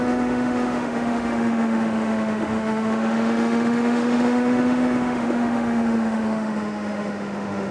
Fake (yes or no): yes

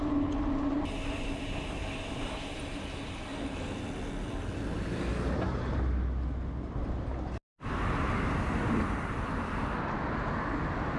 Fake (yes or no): no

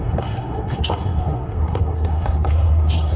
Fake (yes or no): yes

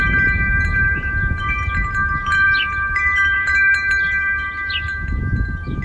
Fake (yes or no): yes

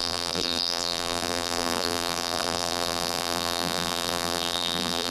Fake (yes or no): yes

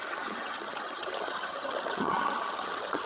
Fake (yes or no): yes